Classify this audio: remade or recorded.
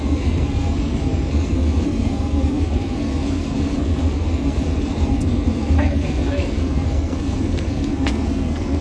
remade